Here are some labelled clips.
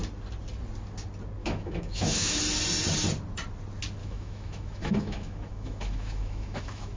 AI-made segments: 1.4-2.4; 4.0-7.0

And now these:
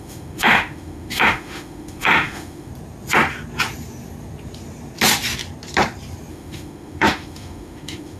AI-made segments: 0.0-2.7; 6.3-8.2

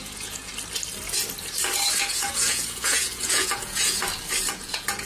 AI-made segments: 0.0-0.5; 2.1-4.0; 4.5-5.1

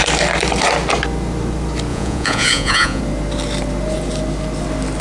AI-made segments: 1.9-3.0

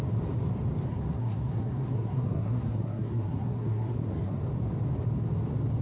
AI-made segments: 0.9-4.4

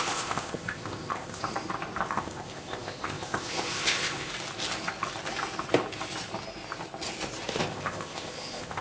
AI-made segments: 0.0-1.4; 2.1-4.3; 7.6-8.8

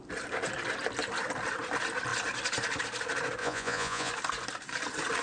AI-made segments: 3.4-4.1

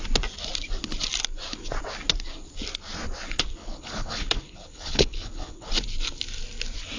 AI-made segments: 3.6-5.7